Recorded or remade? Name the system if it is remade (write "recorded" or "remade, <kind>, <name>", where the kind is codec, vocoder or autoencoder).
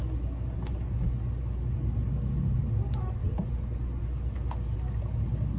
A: recorded